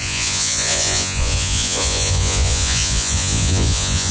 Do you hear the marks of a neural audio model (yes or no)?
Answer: yes